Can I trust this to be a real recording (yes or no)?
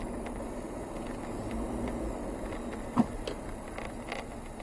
yes